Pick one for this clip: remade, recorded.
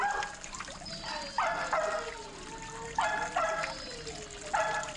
recorded